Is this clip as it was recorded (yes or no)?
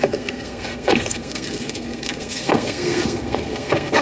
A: no